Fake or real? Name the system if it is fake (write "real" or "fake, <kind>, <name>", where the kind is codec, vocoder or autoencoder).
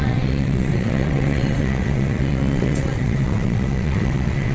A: fake, vocoder, WaveNeXt